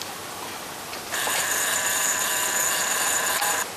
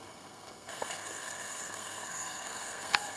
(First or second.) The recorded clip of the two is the first